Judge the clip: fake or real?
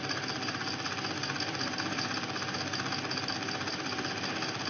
real